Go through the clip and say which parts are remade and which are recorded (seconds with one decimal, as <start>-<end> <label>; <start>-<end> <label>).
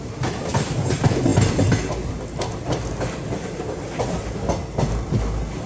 0.0-5.7 recorded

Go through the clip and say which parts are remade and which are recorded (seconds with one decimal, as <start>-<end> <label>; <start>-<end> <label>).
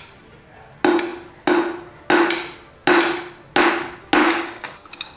0.0-4.2 recorded; 4.2-5.2 remade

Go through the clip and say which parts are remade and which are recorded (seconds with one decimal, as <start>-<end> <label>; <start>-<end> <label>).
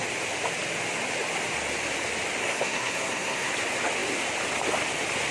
0.0-2.4 recorded; 2.4-3.5 remade; 3.5-5.3 recorded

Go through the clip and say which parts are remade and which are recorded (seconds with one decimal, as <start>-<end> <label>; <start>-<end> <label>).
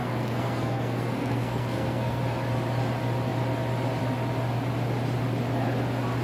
0.0-2.2 remade; 2.2-6.2 recorded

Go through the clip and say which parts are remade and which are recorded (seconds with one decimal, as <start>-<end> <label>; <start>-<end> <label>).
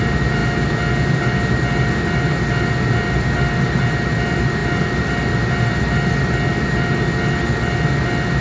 0.0-8.4 recorded